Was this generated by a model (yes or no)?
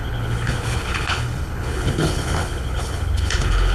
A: yes